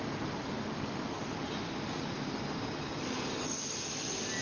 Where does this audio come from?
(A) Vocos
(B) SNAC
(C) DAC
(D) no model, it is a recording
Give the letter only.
D